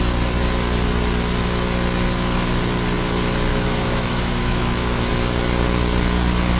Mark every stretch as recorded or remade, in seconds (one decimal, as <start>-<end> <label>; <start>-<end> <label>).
0.0-3.5 recorded; 3.5-5.1 remade; 5.1-6.6 recorded